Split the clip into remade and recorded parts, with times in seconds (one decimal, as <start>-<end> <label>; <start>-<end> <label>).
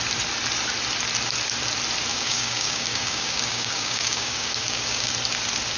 0.0-2.1 recorded; 2.1-5.1 remade; 5.1-5.8 recorded